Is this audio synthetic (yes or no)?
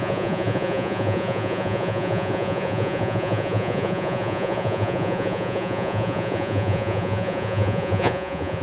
yes